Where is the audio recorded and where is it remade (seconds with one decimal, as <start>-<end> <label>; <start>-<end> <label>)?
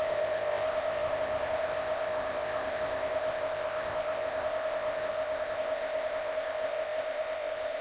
0.0-7.8 remade